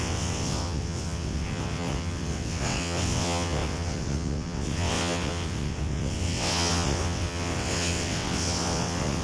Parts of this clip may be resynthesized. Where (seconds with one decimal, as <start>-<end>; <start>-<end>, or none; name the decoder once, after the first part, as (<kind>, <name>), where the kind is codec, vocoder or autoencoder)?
0.0-9.2 (vocoder, WaveNeXt)

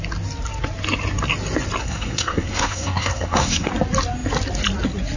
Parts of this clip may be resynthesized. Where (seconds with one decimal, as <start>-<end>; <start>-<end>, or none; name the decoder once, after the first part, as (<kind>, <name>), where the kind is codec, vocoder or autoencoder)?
1.8-3.7 (codec, SNAC)

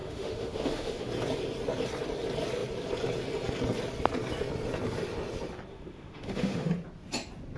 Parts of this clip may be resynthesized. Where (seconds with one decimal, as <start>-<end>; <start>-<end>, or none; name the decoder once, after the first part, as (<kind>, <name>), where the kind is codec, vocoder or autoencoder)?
0.0-1.1 (autoencoder, DAC-VAE); 5.7-6.7

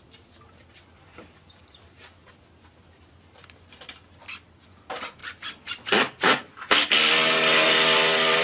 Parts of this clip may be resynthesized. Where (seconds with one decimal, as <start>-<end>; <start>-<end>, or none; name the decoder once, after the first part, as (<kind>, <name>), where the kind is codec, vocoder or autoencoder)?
0.0-5.2 (vocoder, BigVGAN v2); 5.9-8.4